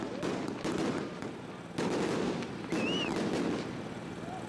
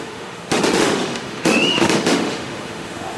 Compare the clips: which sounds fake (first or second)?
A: second